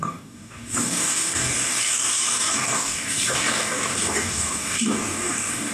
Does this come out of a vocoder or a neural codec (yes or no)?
yes